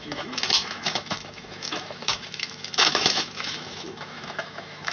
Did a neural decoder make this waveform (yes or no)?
yes